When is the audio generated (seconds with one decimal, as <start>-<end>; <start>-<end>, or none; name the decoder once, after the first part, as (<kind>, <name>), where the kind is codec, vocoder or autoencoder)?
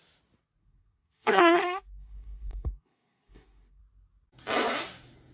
0.6-3.8 (codec, SNAC)